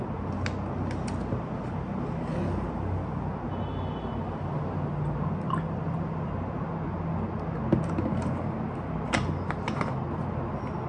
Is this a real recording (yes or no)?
yes